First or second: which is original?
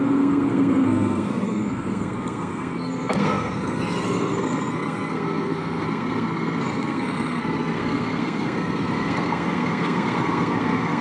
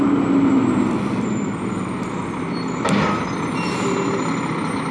second